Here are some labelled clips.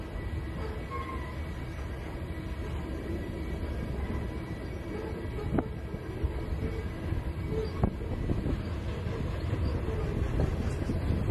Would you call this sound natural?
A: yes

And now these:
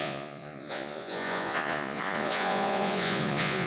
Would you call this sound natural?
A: no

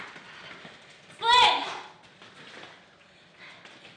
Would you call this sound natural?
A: yes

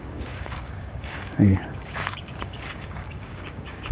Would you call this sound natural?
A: no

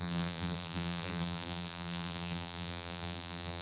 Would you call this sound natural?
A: no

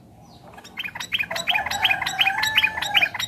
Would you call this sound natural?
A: yes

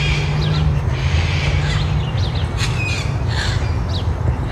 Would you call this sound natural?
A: yes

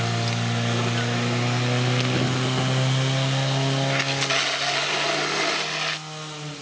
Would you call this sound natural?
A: yes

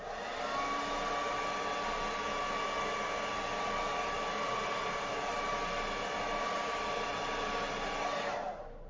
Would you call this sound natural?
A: yes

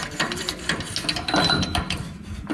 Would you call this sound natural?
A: yes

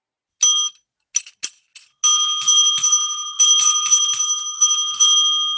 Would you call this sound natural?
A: yes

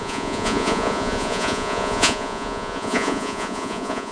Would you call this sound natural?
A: no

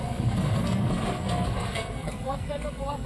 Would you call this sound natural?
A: no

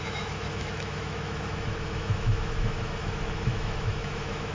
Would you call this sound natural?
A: no